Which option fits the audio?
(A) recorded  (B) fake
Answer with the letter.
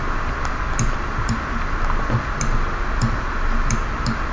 A